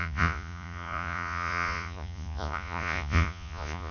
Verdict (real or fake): fake